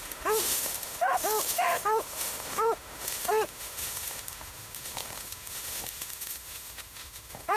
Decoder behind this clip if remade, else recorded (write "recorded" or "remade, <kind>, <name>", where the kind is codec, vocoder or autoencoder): remade, autoencoder, DAC-VAE